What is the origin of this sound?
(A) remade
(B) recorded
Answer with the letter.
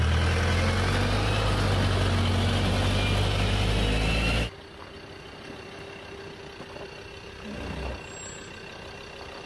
B